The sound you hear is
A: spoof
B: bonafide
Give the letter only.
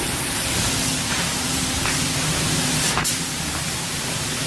A